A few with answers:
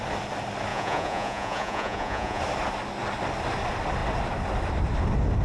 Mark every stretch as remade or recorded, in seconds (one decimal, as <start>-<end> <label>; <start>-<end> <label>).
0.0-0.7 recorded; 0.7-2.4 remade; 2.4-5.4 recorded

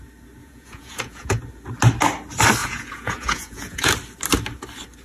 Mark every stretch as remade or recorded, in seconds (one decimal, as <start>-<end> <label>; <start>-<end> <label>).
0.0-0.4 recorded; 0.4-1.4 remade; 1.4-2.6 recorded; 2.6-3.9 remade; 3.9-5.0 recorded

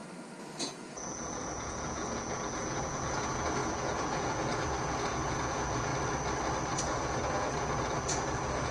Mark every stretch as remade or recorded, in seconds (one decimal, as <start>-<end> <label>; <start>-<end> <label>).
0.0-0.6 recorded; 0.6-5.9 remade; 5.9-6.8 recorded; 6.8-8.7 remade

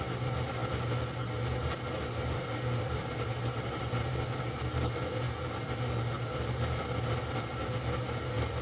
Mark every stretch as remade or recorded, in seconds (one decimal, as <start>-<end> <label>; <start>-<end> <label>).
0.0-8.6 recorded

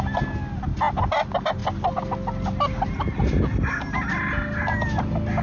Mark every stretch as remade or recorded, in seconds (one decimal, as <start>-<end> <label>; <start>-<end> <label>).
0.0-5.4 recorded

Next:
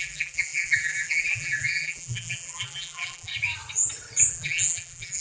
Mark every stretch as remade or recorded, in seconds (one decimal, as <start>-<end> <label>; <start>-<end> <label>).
0.0-3.3 remade; 3.3-4.3 recorded; 4.3-5.2 remade